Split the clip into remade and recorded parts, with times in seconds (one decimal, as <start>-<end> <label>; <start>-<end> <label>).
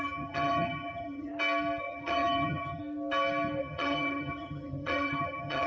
0.0-1.3 remade; 1.3-1.8 recorded; 1.8-2.8 remade; 2.8-3.6 recorded; 3.6-5.7 remade